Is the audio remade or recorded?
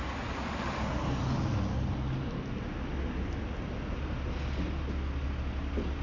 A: recorded